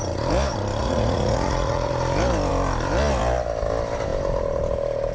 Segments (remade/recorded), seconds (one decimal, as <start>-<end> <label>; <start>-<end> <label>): 0.0-0.8 recorded; 0.8-1.9 remade; 1.9-5.1 recorded